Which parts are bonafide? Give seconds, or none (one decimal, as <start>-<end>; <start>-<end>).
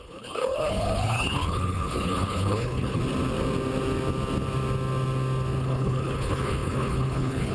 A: 3.0-5.6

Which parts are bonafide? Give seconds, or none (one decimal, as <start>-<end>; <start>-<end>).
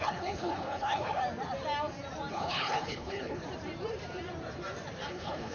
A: 1.2-2.3; 3.4-5.1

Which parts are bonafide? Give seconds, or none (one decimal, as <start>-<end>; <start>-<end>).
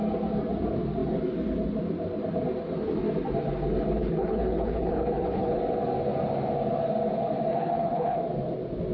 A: 0.0-4.0; 5.6-7.5; 8.2-8.9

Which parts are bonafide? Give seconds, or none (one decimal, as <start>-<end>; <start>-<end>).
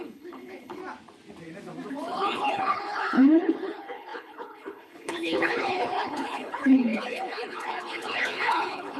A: 0.8-1.9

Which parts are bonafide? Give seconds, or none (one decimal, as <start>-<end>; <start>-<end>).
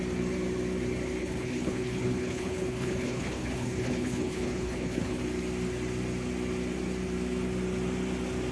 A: 0.0-1.2; 5.2-8.5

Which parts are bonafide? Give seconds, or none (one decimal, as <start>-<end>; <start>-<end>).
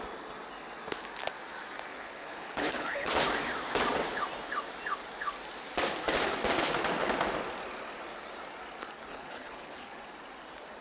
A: 0.0-1.9; 3.1-9.1; 10.0-10.8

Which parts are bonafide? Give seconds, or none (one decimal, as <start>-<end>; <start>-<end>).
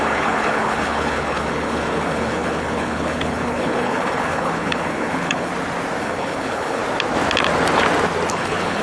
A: 5.5-6.0; 6.8-8.3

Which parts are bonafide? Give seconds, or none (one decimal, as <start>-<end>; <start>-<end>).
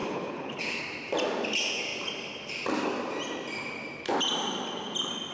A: 0.8-5.3